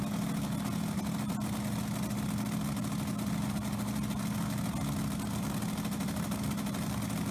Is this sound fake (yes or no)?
no